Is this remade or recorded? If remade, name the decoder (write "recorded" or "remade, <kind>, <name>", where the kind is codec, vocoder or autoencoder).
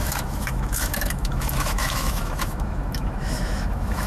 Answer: remade, autoencoder, DAC-VAE